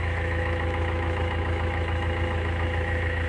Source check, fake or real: fake